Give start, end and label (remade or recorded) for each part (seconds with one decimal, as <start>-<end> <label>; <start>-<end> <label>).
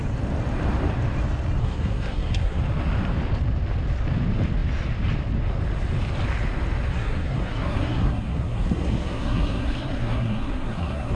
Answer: 0.0-1.6 recorded; 1.6-2.6 remade; 2.6-6.9 recorded; 6.9-11.1 remade